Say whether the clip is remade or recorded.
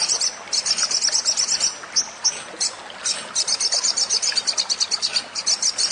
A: recorded